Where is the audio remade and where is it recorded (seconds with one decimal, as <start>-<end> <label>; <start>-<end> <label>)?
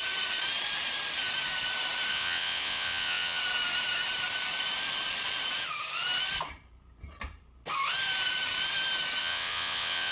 0.0-2.1 recorded; 2.1-3.4 remade; 3.4-9.2 recorded; 9.2-10.1 remade